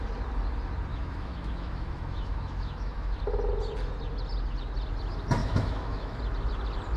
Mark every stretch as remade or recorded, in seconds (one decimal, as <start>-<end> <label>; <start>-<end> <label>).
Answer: 0.0-0.9 recorded; 0.9-3.2 remade; 3.2-5.4 recorded; 5.4-6.2 remade; 6.2-7.0 recorded